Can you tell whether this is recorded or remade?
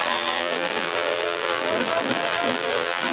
remade